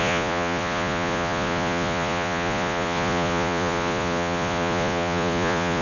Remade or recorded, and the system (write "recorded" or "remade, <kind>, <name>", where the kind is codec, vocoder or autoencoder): remade, vocoder, Vocos